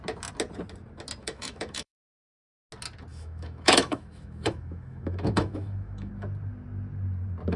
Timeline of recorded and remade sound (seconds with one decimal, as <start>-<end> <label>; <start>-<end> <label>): 0.0-1.2 recorded; 1.2-2.3 remade; 2.3-3.1 recorded; 3.1-6.1 remade; 6.1-7.6 recorded